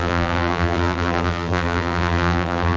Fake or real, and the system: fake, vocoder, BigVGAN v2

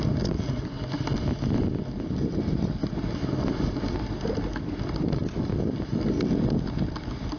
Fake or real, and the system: real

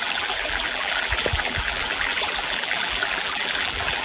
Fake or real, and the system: fake, vocoder, BigVGAN v2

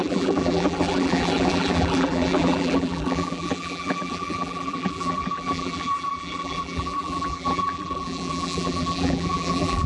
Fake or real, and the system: fake, vocoder, BigVGAN v2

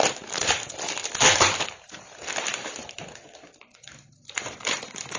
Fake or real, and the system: fake, vocoder, BigVGAN v2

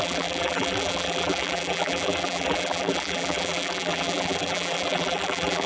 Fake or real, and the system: fake, vocoder, BigVGAN v2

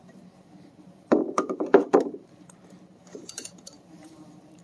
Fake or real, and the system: fake, vocoder, BigVGAN v2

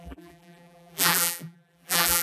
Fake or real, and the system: fake, vocoder, BigVGAN v2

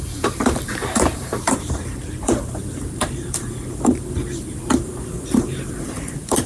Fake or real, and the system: fake, vocoder, BigVGAN v2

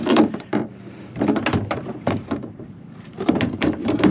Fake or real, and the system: fake, vocoder, BigVGAN v2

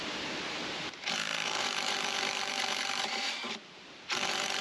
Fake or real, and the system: fake, vocoder, BigVGAN v2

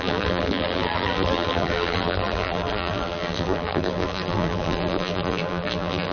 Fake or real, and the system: fake, vocoder, BigVGAN v2